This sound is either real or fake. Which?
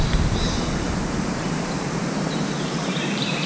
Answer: fake